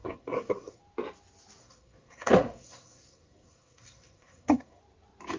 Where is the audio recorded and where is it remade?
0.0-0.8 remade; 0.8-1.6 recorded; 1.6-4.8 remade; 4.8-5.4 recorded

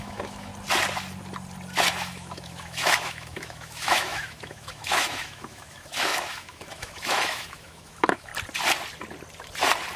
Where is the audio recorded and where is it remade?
0.0-0.5 remade; 0.5-1.9 recorded; 1.9-8.3 remade; 8.3-10.0 recorded

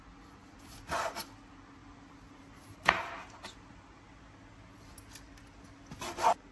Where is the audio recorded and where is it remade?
0.0-1.8 recorded; 1.8-2.6 remade; 2.6-6.5 recorded